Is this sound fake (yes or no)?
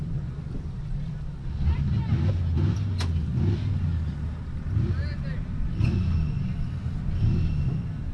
no